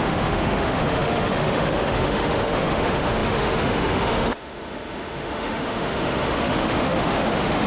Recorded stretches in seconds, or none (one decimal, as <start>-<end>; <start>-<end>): none